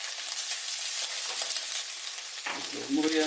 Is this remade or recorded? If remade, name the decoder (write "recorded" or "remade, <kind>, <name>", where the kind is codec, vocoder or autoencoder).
recorded